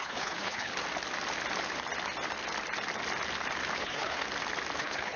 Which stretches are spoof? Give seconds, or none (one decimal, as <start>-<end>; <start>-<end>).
0.0-0.7; 3.8-4.2; 4.8-5.2